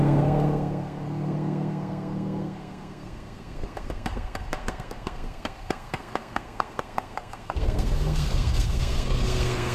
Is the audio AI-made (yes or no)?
yes